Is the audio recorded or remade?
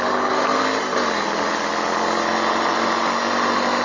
recorded